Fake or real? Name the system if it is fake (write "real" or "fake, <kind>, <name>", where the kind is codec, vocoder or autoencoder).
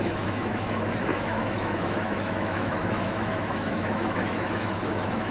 fake, autoencoder, DAC-VAE